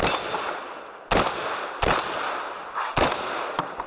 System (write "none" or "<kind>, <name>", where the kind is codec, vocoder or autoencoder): none